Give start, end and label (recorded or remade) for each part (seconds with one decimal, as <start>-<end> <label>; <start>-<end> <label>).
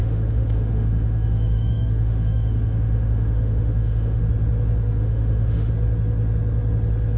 0.0-4.2 remade; 4.2-5.0 recorded; 5.0-5.7 remade; 5.7-7.2 recorded